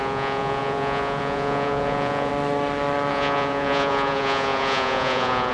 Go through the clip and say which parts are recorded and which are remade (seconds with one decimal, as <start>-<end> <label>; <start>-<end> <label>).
0.0-2.3 remade; 2.3-3.1 recorded; 3.1-5.5 remade